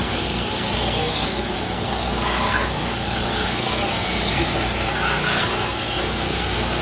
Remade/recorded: remade